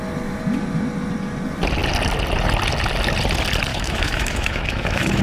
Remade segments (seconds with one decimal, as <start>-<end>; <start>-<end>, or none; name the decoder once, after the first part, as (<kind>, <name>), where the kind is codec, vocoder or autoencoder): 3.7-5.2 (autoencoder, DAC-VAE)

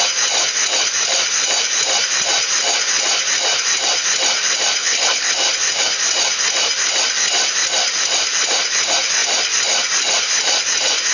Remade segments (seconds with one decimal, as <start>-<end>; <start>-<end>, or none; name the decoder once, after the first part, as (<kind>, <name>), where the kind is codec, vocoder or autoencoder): 4.8-5.3 (codec, HILCodec)

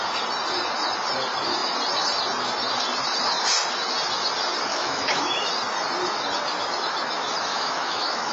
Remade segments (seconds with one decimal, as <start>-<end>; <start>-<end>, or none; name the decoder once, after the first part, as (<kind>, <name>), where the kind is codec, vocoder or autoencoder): 4.7-5.5 (autoencoder, DAC-VAE); 7.5-8.3